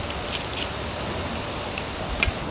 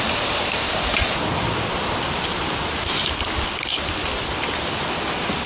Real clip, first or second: first